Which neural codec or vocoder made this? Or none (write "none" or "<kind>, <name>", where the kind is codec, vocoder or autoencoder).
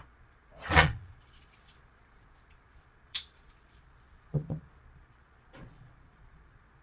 vocoder, Vocos